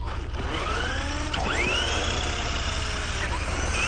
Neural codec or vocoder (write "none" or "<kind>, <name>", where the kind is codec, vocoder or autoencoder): none